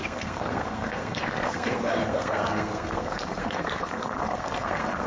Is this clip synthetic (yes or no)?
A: yes